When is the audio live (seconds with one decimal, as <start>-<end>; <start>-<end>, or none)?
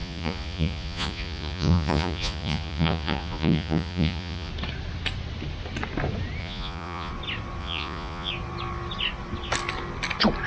4.5-6.4; 7.1-7.6; 8.3-10.5